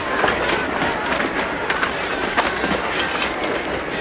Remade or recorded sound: recorded